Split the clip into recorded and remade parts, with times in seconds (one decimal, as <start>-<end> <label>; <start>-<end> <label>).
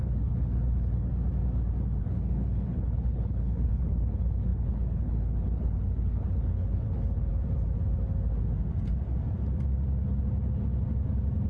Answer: 0.0-1.1 remade; 1.1-2.0 recorded; 2.0-7.3 remade; 7.3-11.5 recorded